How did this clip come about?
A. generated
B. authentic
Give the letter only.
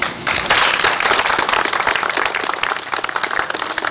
B